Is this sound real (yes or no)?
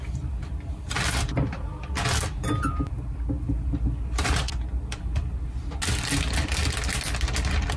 yes